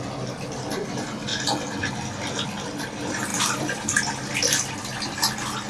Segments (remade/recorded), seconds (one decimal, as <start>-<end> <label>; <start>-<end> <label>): 0.0-3.3 recorded; 3.3-4.7 remade; 4.7-5.7 recorded